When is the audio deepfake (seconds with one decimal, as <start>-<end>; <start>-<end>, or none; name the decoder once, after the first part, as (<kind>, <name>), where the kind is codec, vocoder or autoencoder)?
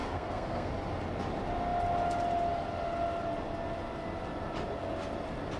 0.0-0.7 (codec, SNAC)